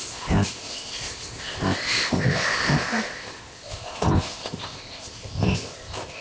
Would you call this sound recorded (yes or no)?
no